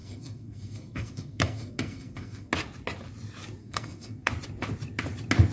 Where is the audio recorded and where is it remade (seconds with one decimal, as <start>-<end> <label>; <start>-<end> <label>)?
0.0-2.5 remade; 2.5-3.6 recorded; 3.6-4.3 remade; 4.3-5.5 recorded

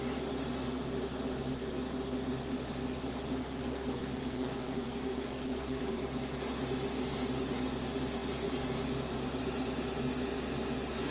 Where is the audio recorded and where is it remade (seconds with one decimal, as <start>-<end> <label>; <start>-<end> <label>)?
0.0-3.4 recorded; 3.4-5.8 remade; 5.8-11.1 recorded

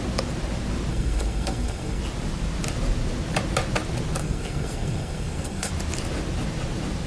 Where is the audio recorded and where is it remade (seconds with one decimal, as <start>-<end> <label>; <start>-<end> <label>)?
0.0-0.9 recorded; 0.9-2.0 remade; 2.0-4.2 recorded; 4.2-5.7 remade; 5.7-7.1 recorded

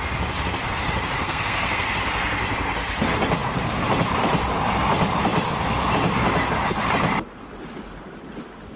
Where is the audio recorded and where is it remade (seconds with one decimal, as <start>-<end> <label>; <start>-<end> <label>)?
0.0-1.2 recorded; 1.2-1.9 remade; 1.9-8.8 recorded

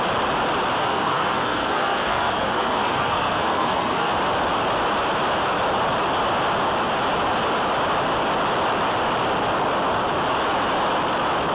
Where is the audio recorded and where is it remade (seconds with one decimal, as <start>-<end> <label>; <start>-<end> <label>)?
0.0-0.8 recorded; 0.8-4.1 remade; 4.1-11.5 recorded

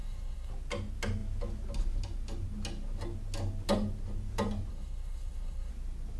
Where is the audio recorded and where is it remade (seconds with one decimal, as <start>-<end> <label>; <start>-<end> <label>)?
0.0-0.5 remade; 0.5-4.7 recorded; 4.7-5.7 remade; 5.7-6.2 recorded

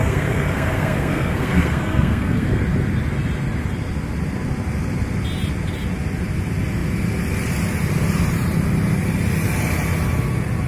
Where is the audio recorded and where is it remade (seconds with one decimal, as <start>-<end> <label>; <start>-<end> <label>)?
0.0-2.6 remade; 2.6-10.7 recorded

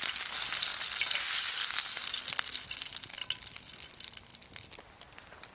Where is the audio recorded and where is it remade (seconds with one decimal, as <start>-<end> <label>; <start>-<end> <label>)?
0.0-5.5 recorded